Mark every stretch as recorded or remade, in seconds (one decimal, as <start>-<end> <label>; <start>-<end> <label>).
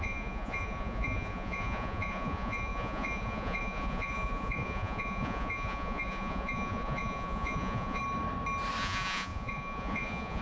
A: 0.0-8.0 remade; 8.0-8.8 recorded; 8.8-10.4 remade